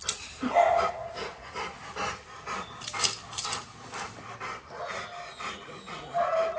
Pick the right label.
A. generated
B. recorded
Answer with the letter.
B